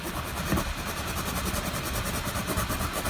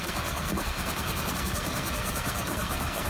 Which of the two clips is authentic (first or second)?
first